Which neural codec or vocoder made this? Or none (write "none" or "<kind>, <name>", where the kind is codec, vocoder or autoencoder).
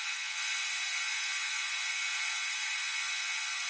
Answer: vocoder, Vocos